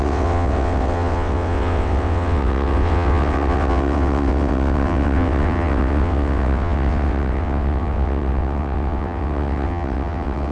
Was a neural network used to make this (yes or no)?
yes